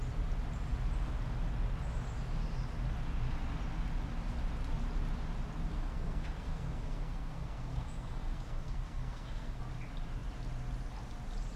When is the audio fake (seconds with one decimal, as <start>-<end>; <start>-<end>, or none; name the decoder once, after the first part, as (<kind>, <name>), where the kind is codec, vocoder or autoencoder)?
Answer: 5.7-9.6 (codec, SNAC)